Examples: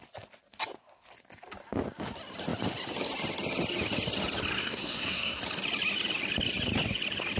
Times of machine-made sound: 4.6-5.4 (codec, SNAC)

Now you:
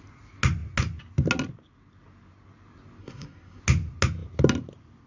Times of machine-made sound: 3.0-3.6 (codec, SNAC)

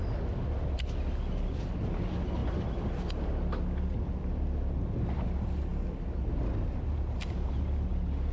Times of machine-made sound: none

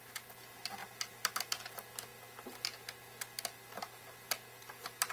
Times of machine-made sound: none

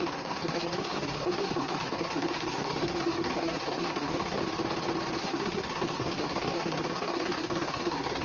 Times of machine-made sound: 0.0-4.4 (codec, SNAC); 5.2-8.2